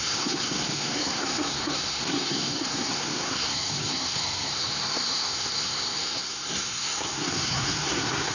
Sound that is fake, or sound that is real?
fake